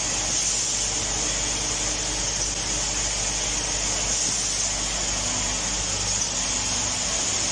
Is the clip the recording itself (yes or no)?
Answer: yes